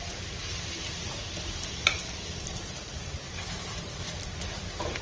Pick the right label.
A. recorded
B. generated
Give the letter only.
B